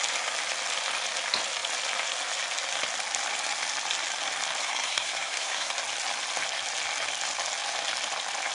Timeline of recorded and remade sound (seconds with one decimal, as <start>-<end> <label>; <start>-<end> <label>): 0.0-4.6 recorded; 4.6-5.7 remade; 5.7-8.5 recorded